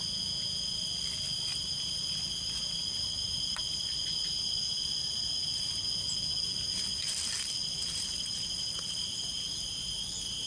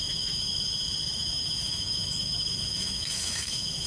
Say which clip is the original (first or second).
first